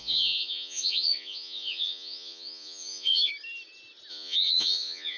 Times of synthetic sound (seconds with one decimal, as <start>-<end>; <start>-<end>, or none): 0.0-3.3; 4.1-5.2